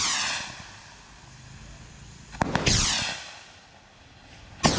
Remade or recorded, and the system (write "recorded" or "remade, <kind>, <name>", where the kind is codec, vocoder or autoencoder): recorded